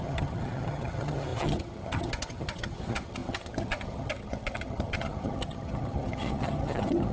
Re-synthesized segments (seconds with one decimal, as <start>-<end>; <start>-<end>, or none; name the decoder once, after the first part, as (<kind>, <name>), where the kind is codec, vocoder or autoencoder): 0.0-7.1 (vocoder, HiFi-GAN)